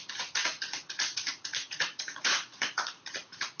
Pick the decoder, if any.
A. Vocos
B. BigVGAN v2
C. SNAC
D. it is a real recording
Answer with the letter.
A